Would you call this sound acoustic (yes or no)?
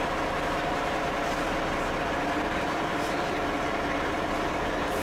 no